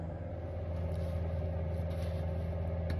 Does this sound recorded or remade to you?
recorded